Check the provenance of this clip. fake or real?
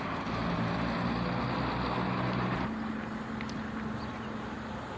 real